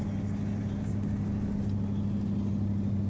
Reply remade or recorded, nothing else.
recorded